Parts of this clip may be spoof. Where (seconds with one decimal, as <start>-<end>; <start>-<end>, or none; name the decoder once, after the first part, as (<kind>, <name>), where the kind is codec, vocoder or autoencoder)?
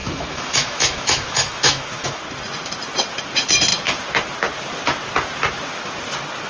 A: 0.0-2.2 (autoencoder, DAC-VAE)